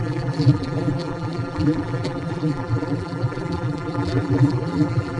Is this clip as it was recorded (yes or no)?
no